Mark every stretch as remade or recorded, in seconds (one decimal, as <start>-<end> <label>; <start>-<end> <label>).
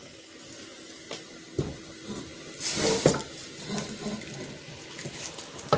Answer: 0.0-5.8 recorded